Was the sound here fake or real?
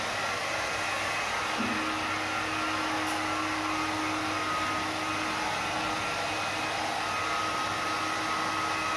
real